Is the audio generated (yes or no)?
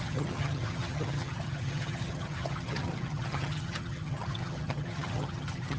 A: yes